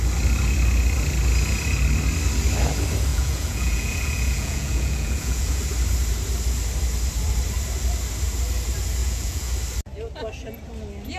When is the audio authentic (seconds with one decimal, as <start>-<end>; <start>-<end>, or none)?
0.0-3.1; 5.6-9.0; 9.5-11.2